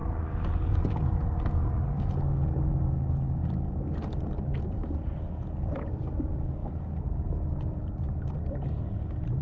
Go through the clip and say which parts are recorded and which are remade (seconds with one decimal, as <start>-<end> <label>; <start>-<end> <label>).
0.0-6.6 recorded; 6.6-7.8 remade; 7.8-9.4 recorded